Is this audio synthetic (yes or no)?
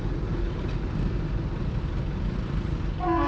no